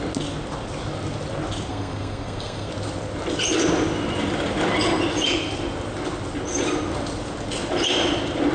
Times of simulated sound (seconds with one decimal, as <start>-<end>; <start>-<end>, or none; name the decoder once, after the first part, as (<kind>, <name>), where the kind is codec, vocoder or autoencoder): 1.7-2.7 (codec, SNAC)